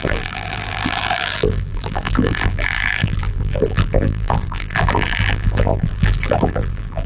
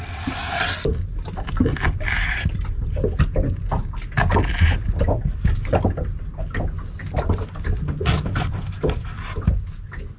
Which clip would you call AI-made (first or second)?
first